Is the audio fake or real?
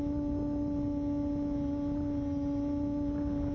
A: real